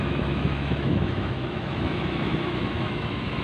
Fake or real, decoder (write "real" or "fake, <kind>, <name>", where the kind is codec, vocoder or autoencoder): fake, autoencoder, DAC-VAE